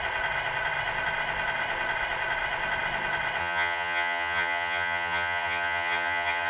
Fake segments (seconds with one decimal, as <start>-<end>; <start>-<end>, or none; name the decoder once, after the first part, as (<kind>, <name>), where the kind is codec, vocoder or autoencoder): 3.4-6.5 (vocoder, HiFi-GAN)